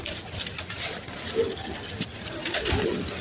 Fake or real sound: real